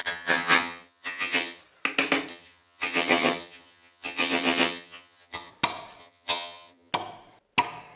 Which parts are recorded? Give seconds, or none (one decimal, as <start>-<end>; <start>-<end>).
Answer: 1.6-2.3; 5.5-6.0; 6.9-8.0